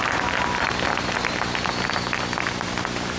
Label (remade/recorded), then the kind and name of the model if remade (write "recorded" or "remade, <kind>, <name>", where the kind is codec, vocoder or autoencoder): recorded